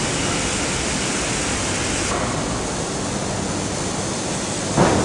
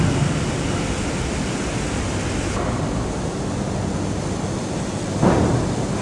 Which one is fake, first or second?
second